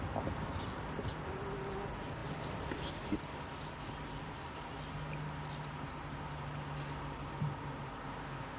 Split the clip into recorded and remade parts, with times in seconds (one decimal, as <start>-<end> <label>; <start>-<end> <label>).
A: 0.0-8.6 recorded